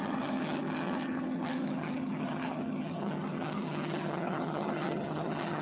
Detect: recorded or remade remade